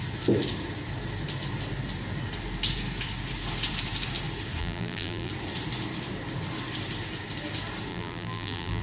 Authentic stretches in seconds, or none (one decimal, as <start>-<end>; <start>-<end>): 0.0-4.6; 5.3-7.9